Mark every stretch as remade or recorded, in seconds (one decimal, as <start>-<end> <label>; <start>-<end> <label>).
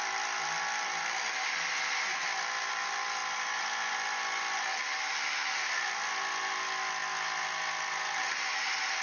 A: 0.0-9.0 recorded